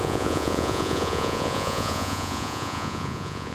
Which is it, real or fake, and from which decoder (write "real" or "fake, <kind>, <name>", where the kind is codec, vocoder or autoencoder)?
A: fake, vocoder, Vocos